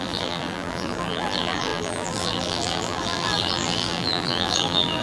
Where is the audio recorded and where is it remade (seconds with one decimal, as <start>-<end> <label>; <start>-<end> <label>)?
0.0-5.0 remade